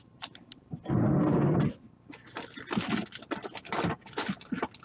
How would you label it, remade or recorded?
recorded